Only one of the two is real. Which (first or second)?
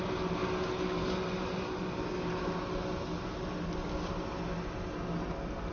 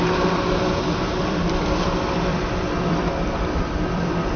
first